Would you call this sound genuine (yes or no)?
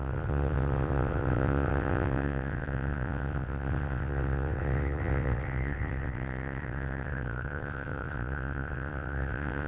no